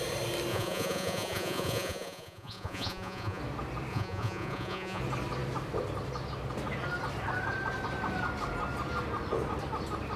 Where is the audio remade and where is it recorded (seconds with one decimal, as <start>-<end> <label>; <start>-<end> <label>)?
0.0-0.5 recorded; 0.5-3.4 remade; 3.4-3.9 recorded; 3.9-5.0 remade; 5.0-10.2 recorded